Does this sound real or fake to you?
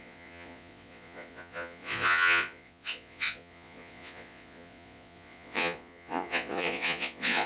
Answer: fake